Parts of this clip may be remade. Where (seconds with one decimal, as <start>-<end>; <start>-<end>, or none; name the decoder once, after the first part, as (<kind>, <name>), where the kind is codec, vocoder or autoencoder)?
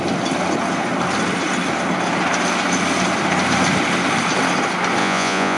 5.0-5.6 (vocoder, Vocos)